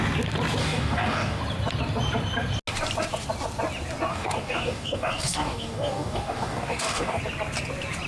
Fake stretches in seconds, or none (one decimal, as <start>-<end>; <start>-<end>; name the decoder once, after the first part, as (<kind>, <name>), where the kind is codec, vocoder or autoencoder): 0.6-1.4 (codec, DAC); 4.1-7.2